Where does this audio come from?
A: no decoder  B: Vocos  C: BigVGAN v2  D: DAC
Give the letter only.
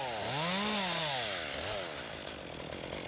A